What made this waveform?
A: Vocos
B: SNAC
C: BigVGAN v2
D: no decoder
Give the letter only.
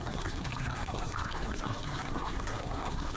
B